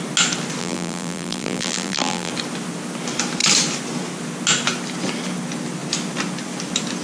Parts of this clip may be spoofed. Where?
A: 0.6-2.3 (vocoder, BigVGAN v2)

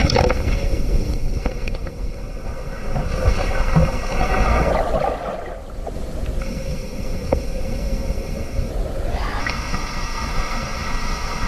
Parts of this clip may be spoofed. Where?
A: 0.0-4.7 (codec, SNAC); 6.4-8.7; 9.4-11.5

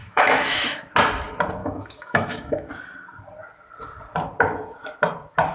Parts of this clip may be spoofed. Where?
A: 0.0-0.8 (autoencoder, DAC-VAE); 1.6-2.7

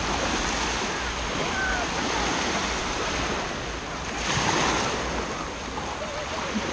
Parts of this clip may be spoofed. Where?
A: none

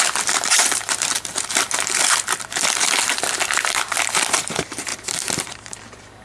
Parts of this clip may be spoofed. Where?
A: 0.0-4.9 (vocoder, BigVGAN v2); 5.5-6.2